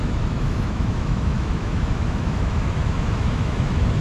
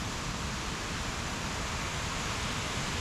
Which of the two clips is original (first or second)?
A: second